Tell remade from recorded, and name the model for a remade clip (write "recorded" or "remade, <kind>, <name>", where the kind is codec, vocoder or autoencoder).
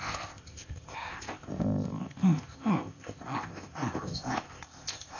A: remade, codec, ZipCodec